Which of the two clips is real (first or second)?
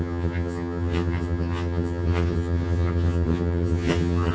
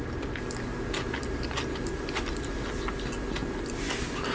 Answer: second